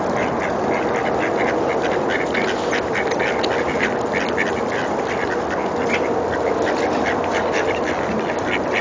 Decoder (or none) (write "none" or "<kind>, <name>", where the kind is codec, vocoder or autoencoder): none